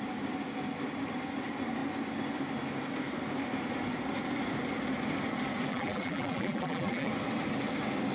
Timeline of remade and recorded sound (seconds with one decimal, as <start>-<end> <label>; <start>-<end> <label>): 0.0-5.7 recorded; 5.7-7.1 remade; 7.1-8.1 recorded